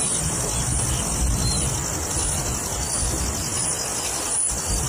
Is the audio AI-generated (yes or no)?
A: no